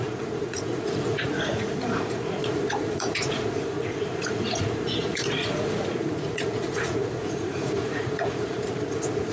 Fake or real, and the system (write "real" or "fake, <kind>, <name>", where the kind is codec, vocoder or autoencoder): fake, vocoder, Vocos